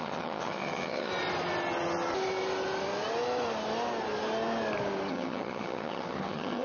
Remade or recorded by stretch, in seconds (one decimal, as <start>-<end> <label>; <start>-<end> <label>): 0.0-1.1 remade; 1.1-5.1 recorded; 5.1-6.6 remade